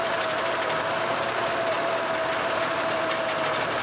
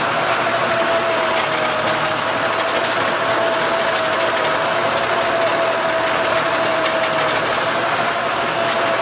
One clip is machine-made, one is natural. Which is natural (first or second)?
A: second